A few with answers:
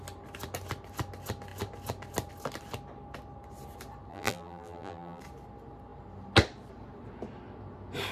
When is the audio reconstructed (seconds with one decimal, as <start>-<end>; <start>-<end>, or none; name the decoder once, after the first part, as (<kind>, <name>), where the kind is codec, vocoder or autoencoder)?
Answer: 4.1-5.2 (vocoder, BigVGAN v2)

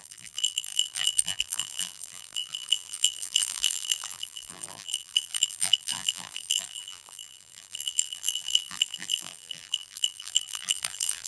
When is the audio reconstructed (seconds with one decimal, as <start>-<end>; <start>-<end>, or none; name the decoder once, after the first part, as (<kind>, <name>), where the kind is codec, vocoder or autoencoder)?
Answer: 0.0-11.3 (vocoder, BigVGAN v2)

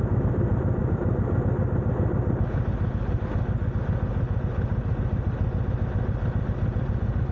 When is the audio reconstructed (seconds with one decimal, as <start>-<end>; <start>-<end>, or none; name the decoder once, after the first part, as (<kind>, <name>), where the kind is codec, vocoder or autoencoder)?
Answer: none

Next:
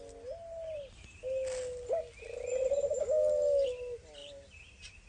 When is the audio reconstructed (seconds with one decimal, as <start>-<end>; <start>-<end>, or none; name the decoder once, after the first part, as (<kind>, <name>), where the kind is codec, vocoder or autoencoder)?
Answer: 4.2-5.1 (vocoder, BigVGAN v2)